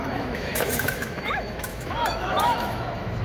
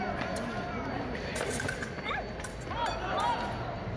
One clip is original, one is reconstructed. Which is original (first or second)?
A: second